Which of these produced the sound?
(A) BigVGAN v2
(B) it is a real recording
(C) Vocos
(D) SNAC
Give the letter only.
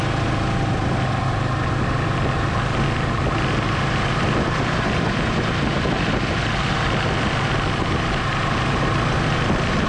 B